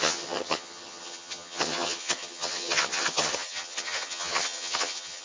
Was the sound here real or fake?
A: fake